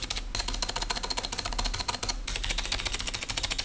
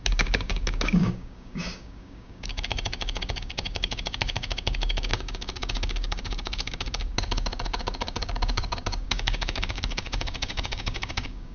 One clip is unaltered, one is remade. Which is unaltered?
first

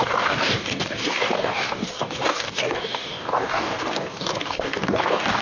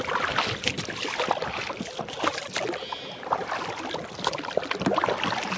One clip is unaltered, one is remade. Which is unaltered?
second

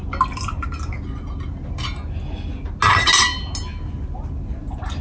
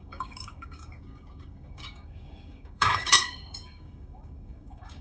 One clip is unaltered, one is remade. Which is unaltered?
first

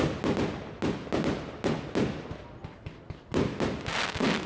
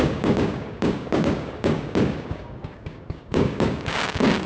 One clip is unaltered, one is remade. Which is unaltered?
first